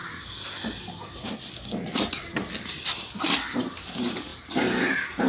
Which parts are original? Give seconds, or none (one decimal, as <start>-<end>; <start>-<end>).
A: 0.0-5.3